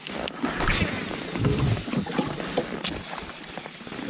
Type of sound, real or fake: real